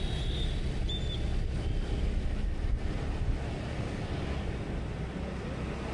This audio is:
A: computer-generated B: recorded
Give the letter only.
B